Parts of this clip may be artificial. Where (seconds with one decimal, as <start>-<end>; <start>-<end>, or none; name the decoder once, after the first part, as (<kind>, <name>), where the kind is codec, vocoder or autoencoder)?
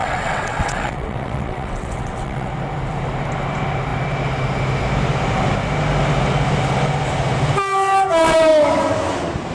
0.0-2.5 (vocoder, WaveNeXt)